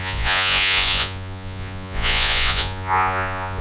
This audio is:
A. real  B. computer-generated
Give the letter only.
B